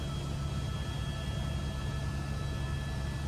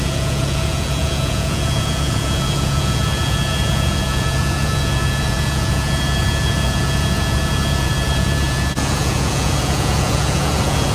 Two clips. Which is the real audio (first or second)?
first